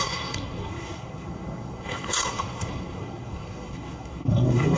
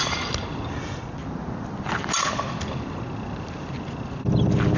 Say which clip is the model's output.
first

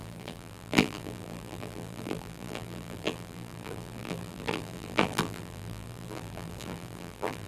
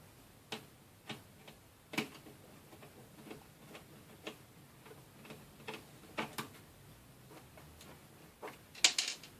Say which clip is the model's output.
first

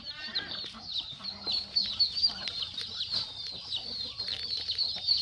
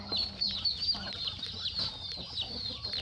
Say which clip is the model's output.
first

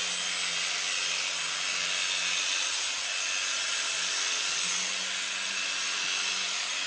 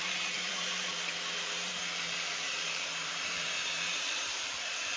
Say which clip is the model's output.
second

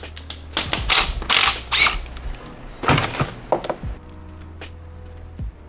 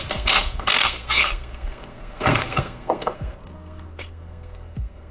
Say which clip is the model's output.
second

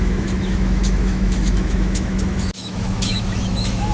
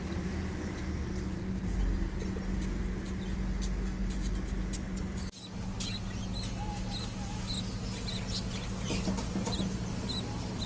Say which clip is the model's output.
first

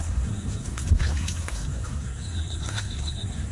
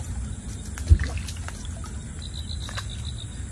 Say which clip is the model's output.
first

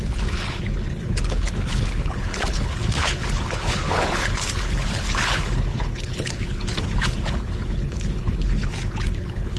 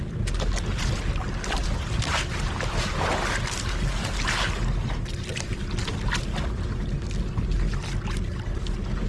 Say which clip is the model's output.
first